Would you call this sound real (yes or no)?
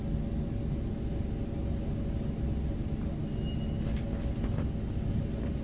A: yes